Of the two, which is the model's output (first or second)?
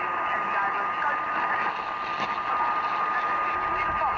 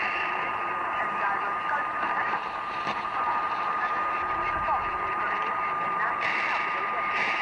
second